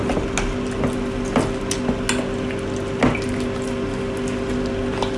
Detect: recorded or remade recorded